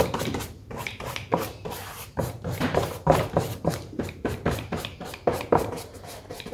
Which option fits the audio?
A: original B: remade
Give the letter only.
B